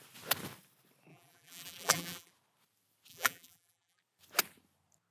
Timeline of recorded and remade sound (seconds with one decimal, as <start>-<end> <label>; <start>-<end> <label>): 0.0-1.1 recorded; 1.1-2.3 remade; 2.3-3.1 recorded; 3.1-4.0 remade; 4.0-5.1 recorded